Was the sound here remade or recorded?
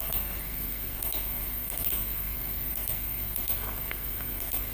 remade